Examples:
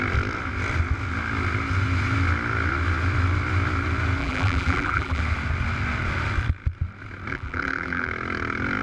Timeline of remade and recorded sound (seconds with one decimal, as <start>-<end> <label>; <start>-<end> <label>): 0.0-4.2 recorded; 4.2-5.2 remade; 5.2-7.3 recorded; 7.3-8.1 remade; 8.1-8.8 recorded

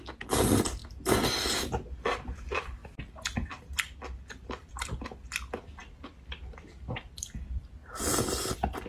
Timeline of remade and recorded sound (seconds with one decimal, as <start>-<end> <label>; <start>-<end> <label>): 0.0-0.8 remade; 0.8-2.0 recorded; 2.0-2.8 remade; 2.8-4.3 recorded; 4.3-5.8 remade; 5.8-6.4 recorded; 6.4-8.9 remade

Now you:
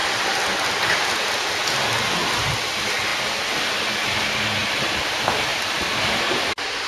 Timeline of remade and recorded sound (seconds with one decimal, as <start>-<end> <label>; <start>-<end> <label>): 0.0-3.1 recorded; 3.1-4.1 remade; 4.1-4.6 recorded; 4.6-5.1 remade; 5.1-5.5 recorded; 5.5-6.9 remade

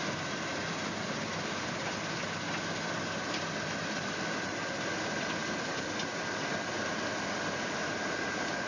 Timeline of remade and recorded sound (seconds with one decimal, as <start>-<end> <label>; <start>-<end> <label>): 0.0-0.5 remade; 0.5-1.6 recorded; 1.6-8.7 remade

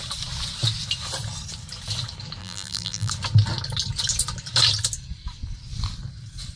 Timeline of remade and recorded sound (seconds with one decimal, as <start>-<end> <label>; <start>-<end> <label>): 0.0-2.4 recorded; 2.4-3.1 remade; 3.1-6.6 recorded

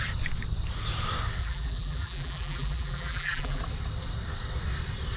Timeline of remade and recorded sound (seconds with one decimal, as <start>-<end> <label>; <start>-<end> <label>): 0.0-1.4 recorded; 1.4-3.6 remade; 3.6-5.2 recorded

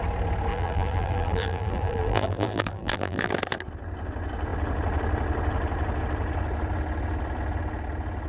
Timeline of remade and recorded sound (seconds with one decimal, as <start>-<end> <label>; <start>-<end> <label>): 0.0-0.5 recorded; 0.5-3.3 remade; 3.3-8.3 recorded

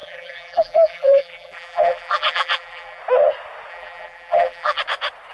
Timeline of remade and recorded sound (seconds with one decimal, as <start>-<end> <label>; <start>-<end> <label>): 0.0-3.0 remade; 3.0-3.7 recorded; 3.7-4.8 remade; 4.8-5.3 recorded